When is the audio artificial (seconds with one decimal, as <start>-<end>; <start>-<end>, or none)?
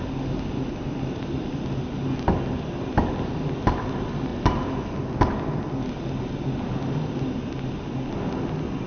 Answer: none